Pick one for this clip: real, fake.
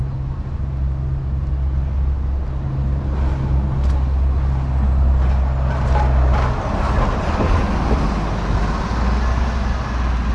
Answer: real